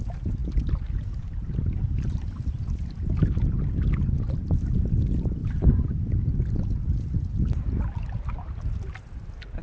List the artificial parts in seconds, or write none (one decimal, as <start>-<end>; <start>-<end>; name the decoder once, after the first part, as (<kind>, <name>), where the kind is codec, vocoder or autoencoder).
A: 5.4-6.2 (vocoder, BigVGAN v2)